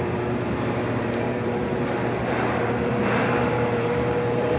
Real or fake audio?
fake